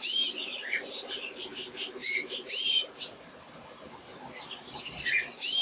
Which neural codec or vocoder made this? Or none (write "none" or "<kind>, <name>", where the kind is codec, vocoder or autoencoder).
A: none